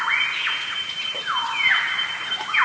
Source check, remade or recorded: recorded